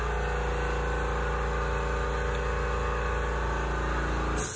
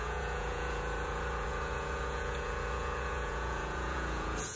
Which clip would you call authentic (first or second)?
first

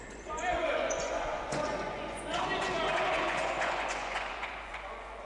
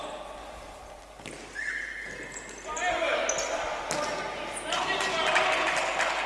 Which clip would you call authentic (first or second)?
second